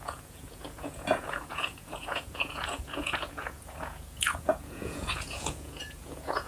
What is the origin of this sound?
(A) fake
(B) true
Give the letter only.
A